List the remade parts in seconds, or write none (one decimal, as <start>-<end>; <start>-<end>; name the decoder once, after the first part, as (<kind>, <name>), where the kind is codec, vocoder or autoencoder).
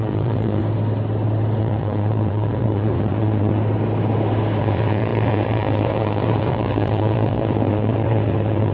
0.0-0.6 (vocoder, WaveNeXt); 1.6-3.6; 4.6-8.7